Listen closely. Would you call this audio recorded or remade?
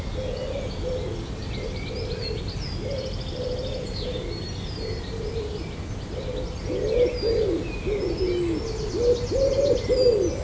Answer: recorded